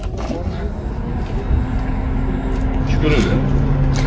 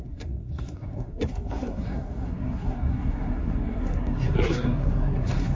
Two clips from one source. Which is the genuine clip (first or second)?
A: first